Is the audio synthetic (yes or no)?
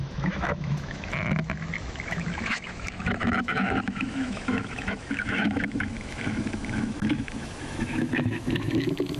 yes